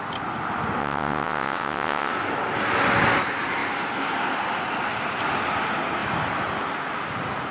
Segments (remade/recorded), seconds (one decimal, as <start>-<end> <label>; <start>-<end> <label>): 0.0-0.8 recorded; 0.8-2.1 remade; 2.1-7.5 recorded